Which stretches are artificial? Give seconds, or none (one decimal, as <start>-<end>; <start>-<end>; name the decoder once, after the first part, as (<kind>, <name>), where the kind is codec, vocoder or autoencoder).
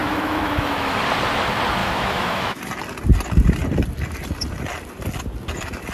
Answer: 0.0-1.0 (autoencoder, DAC-VAE); 1.8-2.6